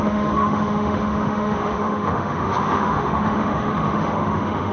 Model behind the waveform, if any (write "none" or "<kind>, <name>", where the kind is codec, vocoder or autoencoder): autoencoder, DAC-VAE